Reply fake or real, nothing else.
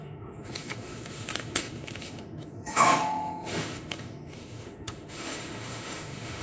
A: fake